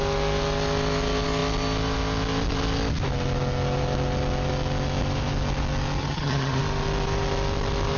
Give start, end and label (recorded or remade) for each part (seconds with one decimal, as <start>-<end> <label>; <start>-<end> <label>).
0.0-6.0 recorded; 6.0-6.6 remade; 6.6-8.0 recorded